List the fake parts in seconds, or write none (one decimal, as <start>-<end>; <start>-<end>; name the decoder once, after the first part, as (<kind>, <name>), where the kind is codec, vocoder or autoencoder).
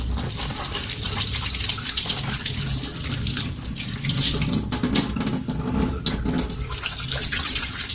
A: 7.2-7.9 (vocoder, WaveNeXt)